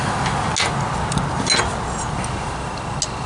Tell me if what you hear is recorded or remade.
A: recorded